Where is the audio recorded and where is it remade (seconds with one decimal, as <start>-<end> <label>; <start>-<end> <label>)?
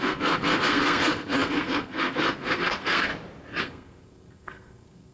0.0-3.1 remade; 3.1-3.6 recorded; 3.6-5.1 remade